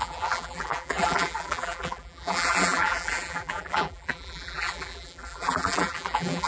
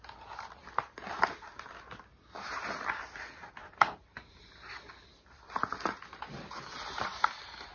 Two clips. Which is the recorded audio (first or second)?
second